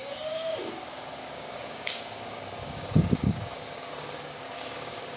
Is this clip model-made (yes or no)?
yes